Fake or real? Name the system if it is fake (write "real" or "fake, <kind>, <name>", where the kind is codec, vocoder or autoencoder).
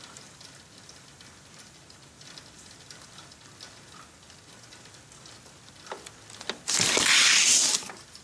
real